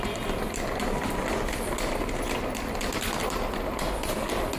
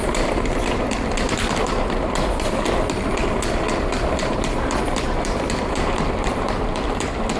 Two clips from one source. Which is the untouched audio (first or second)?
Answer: first